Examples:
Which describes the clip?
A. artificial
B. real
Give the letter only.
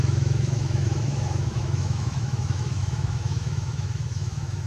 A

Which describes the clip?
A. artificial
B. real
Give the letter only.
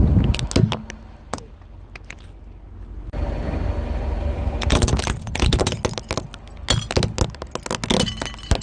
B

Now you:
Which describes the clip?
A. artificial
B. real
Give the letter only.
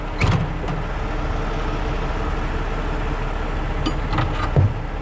B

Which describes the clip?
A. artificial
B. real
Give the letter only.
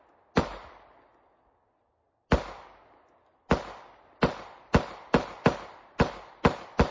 B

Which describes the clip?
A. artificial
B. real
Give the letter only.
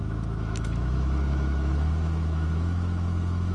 A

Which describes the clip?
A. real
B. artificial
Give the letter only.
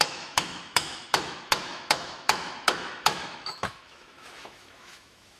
B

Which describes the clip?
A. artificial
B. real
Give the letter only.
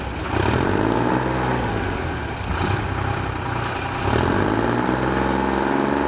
B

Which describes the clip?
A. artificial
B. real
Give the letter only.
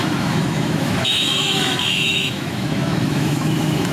A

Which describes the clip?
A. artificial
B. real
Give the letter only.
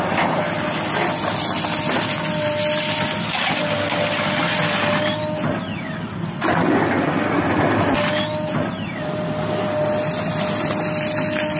B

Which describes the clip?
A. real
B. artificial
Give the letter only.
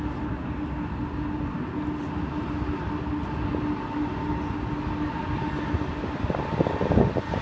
A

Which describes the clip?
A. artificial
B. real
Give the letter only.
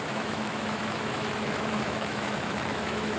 A